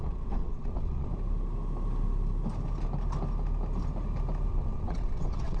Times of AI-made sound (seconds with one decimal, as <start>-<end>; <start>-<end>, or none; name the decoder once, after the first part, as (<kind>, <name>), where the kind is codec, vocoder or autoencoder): 0.0-1.1 (vocoder, WaveNeXt); 4.5-5.6